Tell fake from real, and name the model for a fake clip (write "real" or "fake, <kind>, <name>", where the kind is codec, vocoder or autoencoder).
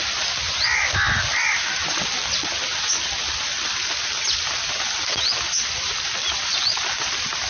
real